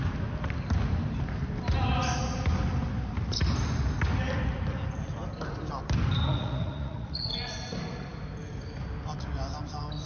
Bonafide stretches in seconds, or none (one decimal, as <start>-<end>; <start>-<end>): 0.0-6.3; 7.5-10.1